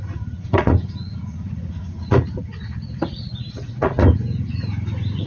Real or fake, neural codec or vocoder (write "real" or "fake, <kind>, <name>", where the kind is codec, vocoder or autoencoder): fake, vocoder, Vocos